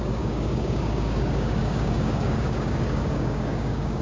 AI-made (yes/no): yes